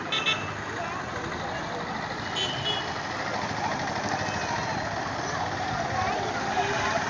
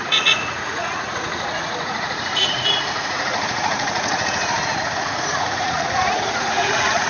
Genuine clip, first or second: first